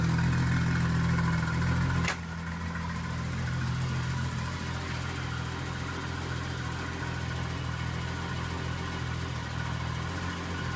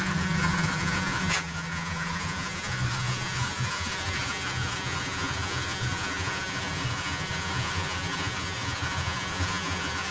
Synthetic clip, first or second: second